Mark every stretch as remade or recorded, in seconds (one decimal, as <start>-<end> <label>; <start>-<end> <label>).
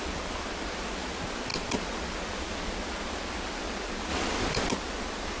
0.0-5.4 recorded